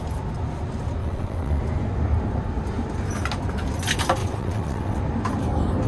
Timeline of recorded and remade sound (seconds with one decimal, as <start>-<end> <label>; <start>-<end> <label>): 0.0-1.0 recorded; 1.0-1.6 remade; 1.6-4.2 recorded; 4.2-5.0 remade; 5.0-5.9 recorded